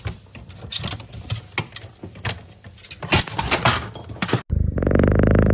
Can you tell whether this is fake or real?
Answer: real